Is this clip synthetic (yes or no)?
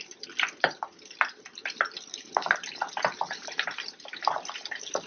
yes